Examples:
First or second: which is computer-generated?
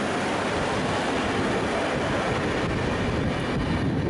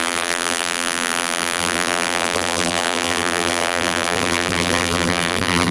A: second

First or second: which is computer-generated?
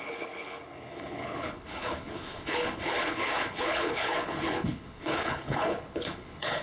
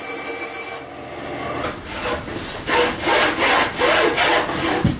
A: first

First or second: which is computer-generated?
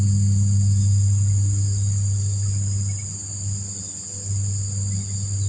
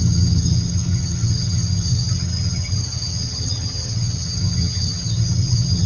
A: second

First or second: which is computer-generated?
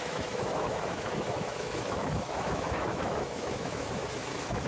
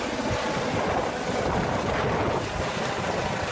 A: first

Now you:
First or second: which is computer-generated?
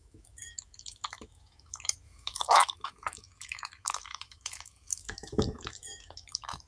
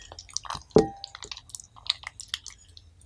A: first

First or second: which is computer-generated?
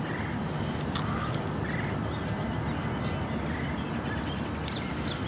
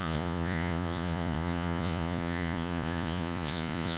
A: second